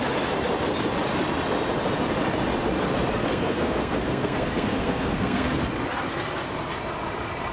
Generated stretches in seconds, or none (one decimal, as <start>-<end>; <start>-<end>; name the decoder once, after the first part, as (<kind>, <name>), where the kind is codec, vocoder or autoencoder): 3.3-5.6 (codec, SNAC)